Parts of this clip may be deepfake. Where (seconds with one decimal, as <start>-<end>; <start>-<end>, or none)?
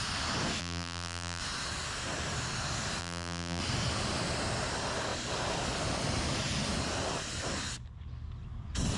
0.6-1.4; 3.0-3.6